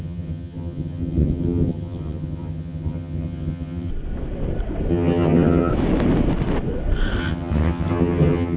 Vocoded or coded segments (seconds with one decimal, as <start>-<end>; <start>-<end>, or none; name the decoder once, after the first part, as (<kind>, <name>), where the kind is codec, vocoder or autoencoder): 0.0-3.9 (vocoder, HiFi-GAN); 4.9-5.7; 7.2-8.6